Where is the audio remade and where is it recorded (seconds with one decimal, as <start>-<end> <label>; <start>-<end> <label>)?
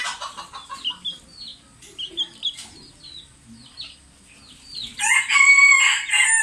0.0-6.4 recorded